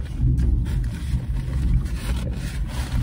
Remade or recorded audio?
recorded